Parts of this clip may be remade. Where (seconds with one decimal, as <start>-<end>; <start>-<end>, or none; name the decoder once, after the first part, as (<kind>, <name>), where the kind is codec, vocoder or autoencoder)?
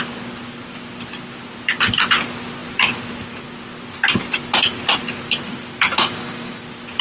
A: 5.9-6.6 (codec, DAC)